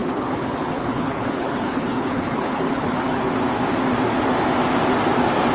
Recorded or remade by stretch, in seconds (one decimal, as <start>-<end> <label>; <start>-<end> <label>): 0.0-3.3 remade; 3.3-5.5 recorded